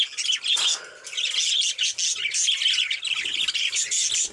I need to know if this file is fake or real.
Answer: real